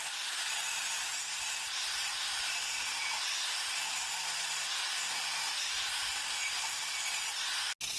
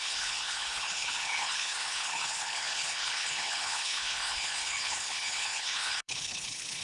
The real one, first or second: first